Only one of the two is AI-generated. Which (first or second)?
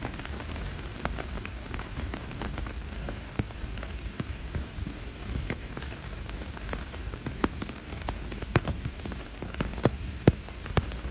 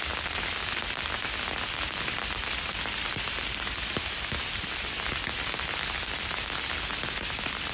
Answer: first